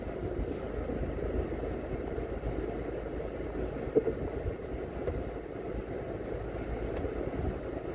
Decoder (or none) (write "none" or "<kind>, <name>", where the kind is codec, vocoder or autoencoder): none